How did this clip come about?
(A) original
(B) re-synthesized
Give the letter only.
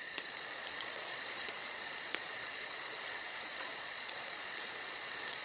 B